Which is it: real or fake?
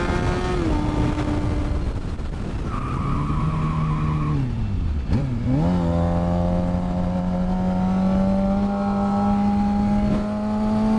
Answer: real